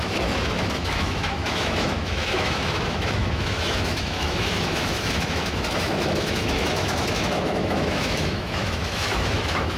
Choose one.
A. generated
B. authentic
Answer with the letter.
A